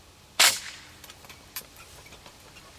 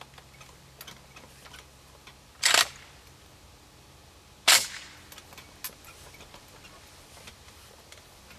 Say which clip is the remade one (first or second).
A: first